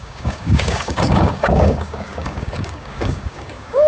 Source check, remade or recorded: remade